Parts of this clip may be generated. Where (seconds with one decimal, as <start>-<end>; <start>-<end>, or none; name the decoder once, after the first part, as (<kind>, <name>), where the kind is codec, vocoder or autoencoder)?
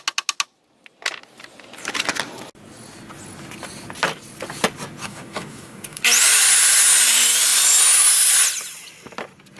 5.0-6.0 (codec, DAC)